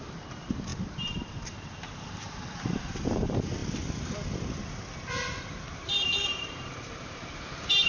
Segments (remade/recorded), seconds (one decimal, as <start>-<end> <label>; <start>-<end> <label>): 0.0-3.6 remade; 3.6-5.4 recorded; 5.4-7.9 remade